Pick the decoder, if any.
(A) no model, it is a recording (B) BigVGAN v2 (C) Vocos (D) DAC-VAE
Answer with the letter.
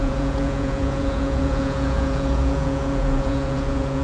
C